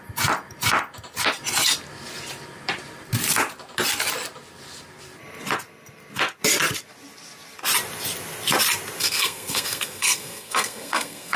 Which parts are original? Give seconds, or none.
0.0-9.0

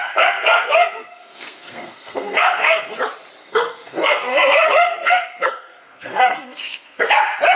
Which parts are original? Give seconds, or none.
2.9-3.4; 7.1-7.6

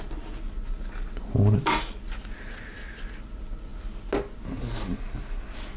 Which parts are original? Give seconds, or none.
0.0-5.8

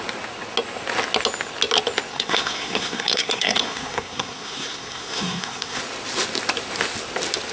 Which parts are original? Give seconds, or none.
0.0-2.1; 5.8-7.5